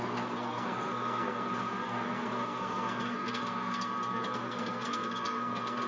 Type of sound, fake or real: fake